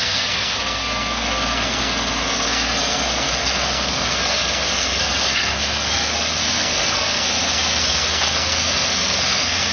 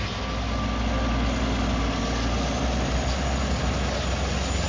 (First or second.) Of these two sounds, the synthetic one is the first